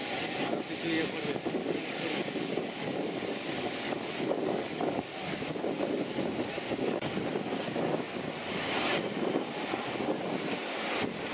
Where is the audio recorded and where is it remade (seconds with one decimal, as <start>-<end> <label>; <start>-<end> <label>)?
0.0-1.6 recorded; 1.6-5.6 remade; 5.6-11.3 recorded